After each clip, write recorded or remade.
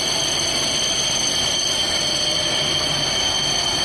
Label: recorded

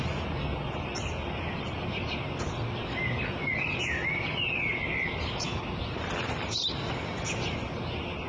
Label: recorded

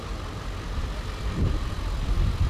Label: remade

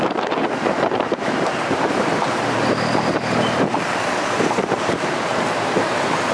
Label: remade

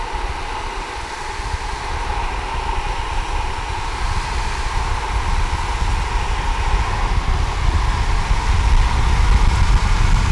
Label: recorded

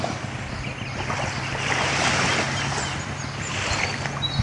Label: recorded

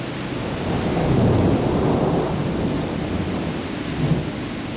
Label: recorded